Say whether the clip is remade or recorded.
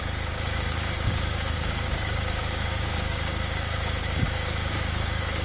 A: remade